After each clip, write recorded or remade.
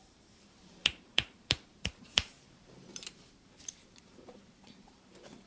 remade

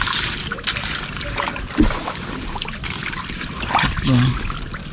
recorded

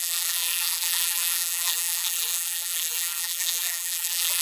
remade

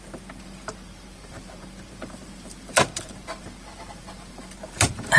remade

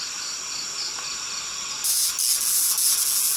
recorded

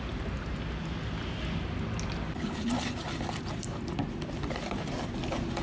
recorded